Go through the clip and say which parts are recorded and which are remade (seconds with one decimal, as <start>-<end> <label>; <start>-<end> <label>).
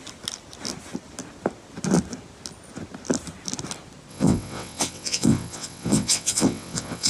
0.0-4.1 recorded; 4.1-7.1 remade